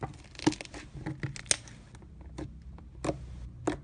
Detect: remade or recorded recorded